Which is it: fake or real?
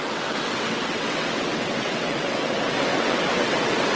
fake